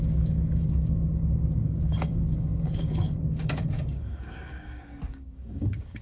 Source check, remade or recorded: remade